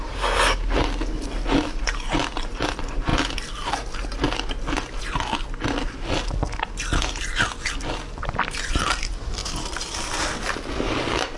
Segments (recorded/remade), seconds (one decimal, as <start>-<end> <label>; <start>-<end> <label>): 0.0-11.4 recorded